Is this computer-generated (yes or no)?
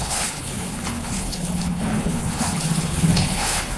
yes